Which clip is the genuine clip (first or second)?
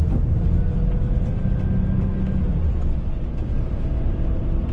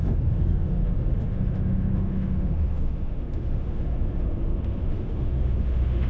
first